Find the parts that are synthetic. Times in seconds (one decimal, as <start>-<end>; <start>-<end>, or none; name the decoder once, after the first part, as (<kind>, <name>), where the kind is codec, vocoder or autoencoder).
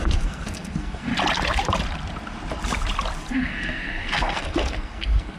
0.0-1.1 (codec, SNAC); 3.3-5.4